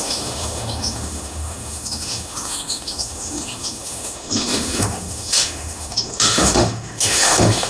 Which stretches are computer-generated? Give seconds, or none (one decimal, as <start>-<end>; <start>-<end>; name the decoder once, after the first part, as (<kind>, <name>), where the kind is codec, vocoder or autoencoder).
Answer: 0.0-7.7 (autoencoder, DAC-VAE)